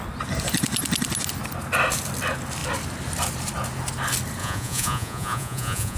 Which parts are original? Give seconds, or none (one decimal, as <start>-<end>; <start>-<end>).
0.0-4.4